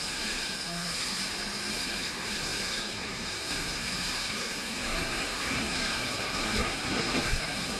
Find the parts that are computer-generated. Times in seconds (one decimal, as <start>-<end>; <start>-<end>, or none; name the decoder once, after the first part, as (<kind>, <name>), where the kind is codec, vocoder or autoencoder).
0.0-1.2 (codec, SNAC); 1.7-7.8